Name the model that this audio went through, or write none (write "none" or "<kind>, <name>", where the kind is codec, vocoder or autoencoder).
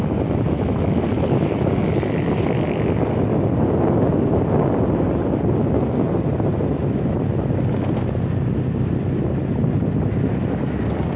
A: none